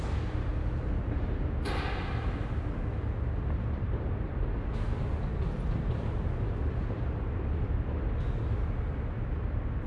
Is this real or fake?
real